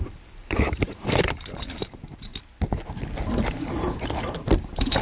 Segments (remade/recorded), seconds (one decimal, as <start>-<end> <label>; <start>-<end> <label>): 0.0-2.3 remade; 2.3-4.2 recorded; 4.2-5.0 remade

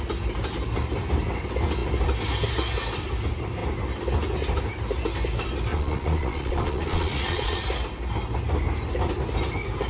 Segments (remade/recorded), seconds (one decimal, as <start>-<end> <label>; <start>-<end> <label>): 0.0-5.7 recorded; 5.7-7.6 remade; 7.6-9.9 recorded

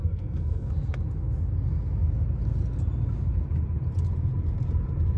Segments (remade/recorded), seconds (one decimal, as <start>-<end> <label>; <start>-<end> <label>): 0.0-0.7 remade; 0.7-5.2 recorded

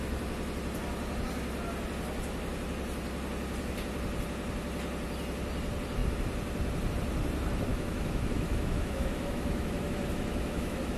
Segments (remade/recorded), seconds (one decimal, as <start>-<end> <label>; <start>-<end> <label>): 0.0-7.7 recorded; 7.7-11.0 remade

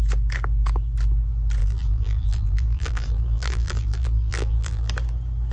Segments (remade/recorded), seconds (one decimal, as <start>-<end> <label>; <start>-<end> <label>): 0.0-1.6 recorded; 1.6-4.9 remade; 4.9-5.5 recorded

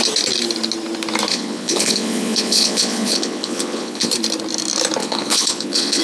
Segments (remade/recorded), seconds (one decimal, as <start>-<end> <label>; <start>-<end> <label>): 0.0-1.3 recorded; 1.3-4.1 remade; 4.1-5.0 recorded; 5.0-6.0 remade

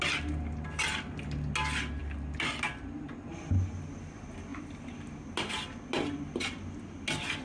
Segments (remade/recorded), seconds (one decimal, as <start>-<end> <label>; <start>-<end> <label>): 0.0-7.4 recorded